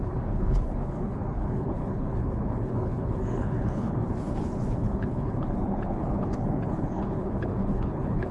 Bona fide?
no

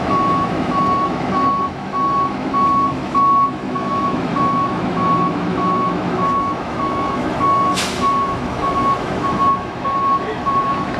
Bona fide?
no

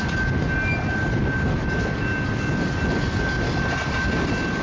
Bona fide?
yes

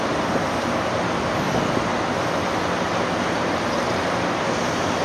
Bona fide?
yes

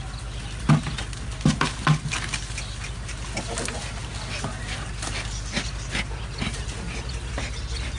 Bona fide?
yes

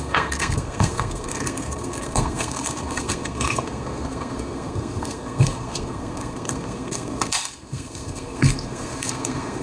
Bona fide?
no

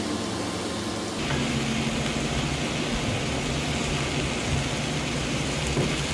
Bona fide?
yes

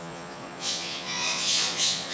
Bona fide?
no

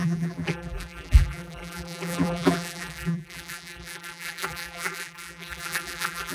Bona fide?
no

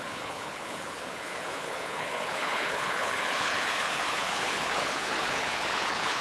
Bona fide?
no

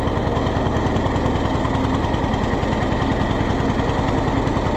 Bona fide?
yes